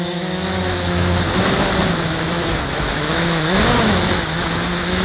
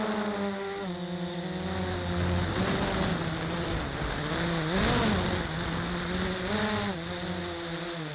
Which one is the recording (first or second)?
second